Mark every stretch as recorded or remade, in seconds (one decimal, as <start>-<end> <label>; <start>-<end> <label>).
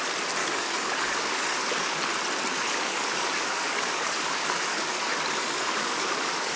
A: 0.0-0.4 recorded; 0.4-2.0 remade; 2.0-2.5 recorded; 2.5-6.6 remade